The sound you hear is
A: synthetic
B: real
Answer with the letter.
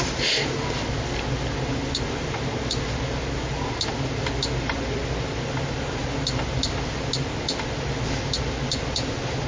B